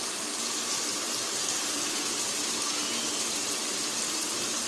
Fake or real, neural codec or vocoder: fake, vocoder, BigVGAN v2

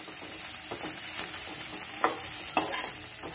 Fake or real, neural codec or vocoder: real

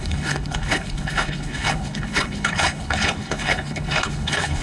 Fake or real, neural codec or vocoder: fake, codec, HILCodec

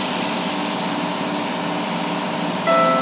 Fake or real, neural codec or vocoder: real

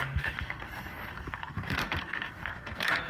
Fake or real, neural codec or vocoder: fake, codec, SNAC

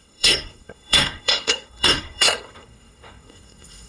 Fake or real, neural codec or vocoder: fake, codec, SNAC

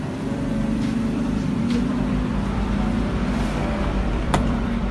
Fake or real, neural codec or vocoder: fake, vocoder, BigVGAN v2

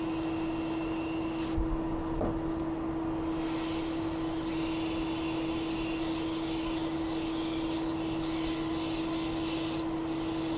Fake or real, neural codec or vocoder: real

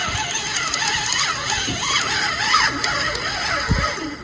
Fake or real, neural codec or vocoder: real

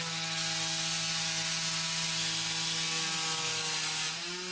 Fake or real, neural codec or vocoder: real